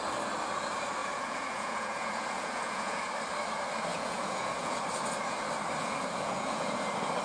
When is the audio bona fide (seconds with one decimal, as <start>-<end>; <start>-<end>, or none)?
0.0-1.0; 3.1-3.9; 4.8-5.8; 6.7-7.2